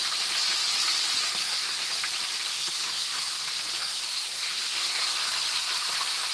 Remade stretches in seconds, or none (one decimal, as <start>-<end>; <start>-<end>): 1.4-1.9; 2.5-3.3; 3.8-5.2